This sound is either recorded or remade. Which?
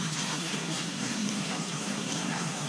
remade